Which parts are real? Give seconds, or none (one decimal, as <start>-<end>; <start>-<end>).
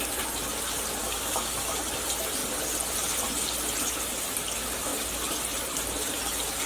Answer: 0.0-1.0; 1.8-6.7